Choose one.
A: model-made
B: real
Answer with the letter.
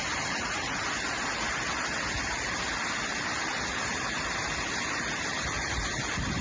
B